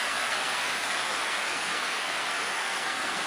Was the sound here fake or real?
fake